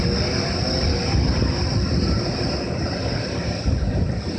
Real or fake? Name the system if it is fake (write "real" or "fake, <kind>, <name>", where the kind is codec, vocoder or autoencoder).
real